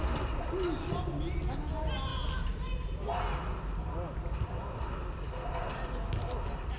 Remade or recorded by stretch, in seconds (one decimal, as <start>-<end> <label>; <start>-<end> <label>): 0.0-6.8 recorded